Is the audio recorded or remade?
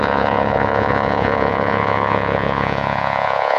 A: remade